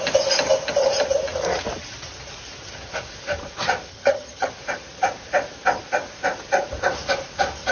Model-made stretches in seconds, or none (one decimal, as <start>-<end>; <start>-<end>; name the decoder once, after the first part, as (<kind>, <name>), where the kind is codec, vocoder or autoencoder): 3.9-4.5 (vocoder, HiFi-GAN)